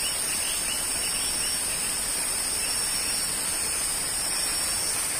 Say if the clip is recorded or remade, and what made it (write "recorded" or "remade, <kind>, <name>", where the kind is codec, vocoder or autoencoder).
recorded